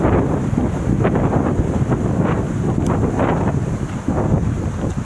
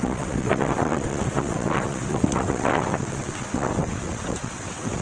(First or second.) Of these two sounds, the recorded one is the first